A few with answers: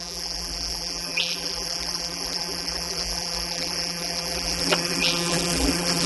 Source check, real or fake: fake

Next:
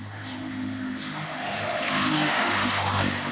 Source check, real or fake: fake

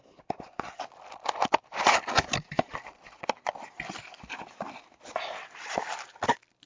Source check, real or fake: real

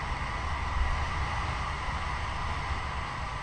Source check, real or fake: real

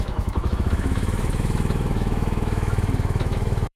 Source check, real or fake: fake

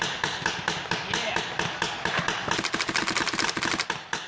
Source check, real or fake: real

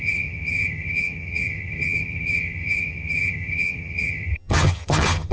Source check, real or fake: fake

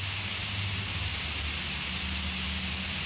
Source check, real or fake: real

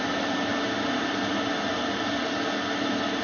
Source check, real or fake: real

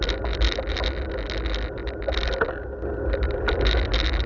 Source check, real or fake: real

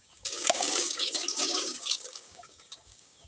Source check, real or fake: fake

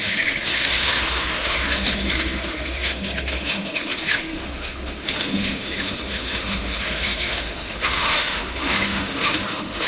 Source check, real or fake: fake